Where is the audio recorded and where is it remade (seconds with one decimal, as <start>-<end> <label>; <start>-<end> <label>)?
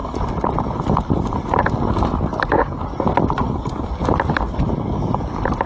0.0-5.7 recorded